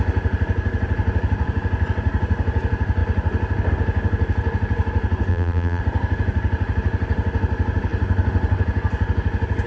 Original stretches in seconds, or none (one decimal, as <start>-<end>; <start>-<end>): 0.0-5.3; 5.8-9.7